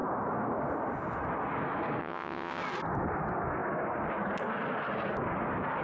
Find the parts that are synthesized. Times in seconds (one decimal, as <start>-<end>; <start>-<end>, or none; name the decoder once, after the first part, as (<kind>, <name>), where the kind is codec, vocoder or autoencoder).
2.0-2.6 (vocoder, WaveNeXt)